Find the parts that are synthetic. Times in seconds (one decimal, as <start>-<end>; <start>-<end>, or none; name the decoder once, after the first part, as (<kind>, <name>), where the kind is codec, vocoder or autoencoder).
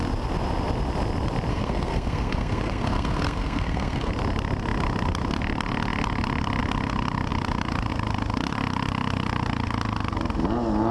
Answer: 1.5-4.1 (codec, SNAC)